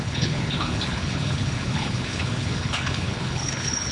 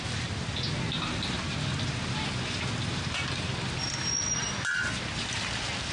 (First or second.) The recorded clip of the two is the second